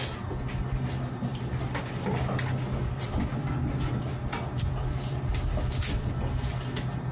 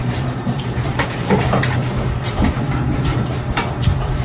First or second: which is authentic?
first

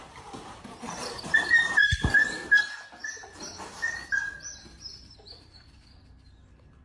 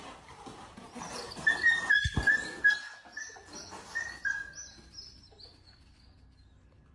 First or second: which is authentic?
second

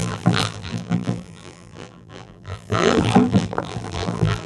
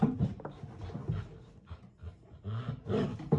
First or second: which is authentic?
second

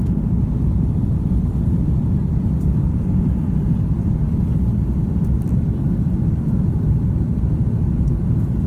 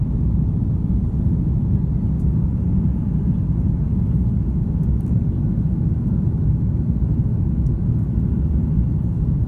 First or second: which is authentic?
second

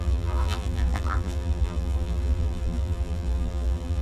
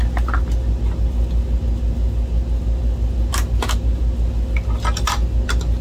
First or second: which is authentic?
second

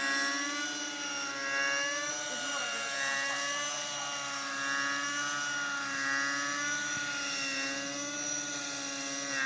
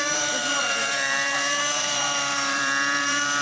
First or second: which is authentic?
first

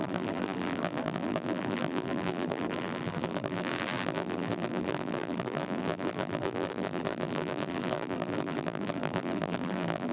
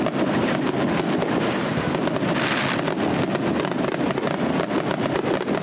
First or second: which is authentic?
second